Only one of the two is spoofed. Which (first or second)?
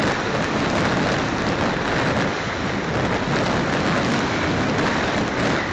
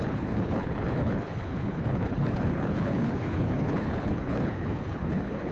second